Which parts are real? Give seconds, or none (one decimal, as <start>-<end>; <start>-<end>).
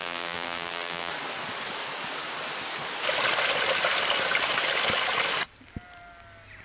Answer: 1.1-6.6